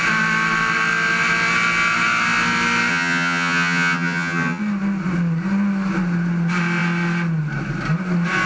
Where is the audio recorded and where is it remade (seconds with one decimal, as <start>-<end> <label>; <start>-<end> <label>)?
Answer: 0.0-2.9 recorded; 2.9-4.6 remade; 4.6-8.5 recorded